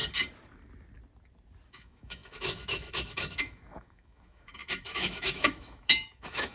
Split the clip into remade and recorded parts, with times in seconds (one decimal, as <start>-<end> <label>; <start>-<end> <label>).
0.0-1.7 recorded; 1.7-6.5 remade